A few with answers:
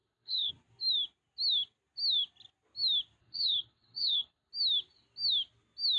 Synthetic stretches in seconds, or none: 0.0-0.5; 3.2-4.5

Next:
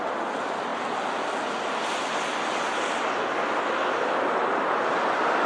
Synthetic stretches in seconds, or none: none

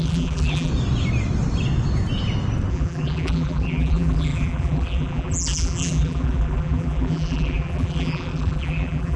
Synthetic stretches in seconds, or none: 0.0-0.7; 2.7-9.2

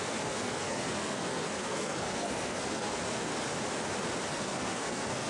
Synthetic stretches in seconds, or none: 0.0-3.3; 4.3-5.3